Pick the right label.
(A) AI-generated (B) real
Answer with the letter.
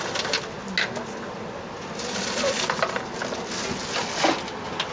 B